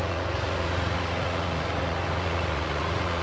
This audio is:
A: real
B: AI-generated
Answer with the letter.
B